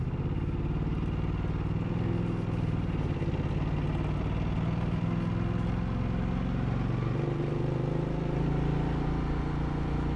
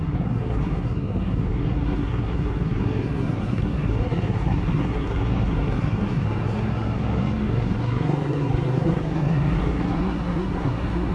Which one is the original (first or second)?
first